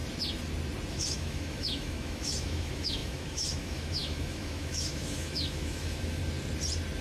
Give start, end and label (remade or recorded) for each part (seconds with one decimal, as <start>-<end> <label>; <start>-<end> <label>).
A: 0.0-0.9 recorded; 0.9-6.2 remade; 6.2-7.0 recorded